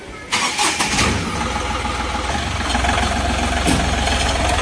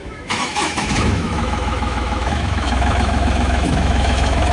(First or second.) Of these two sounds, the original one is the first